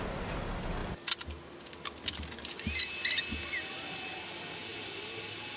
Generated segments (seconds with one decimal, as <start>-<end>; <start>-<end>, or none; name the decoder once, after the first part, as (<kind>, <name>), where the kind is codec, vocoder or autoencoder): none